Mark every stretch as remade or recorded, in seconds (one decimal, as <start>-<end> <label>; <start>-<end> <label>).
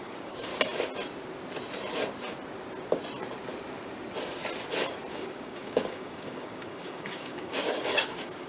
0.0-0.5 remade; 0.5-5.1 recorded; 5.1-8.5 remade